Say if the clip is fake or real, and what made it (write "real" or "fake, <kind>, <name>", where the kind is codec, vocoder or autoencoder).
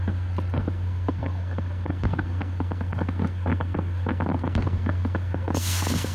fake, codec, SNAC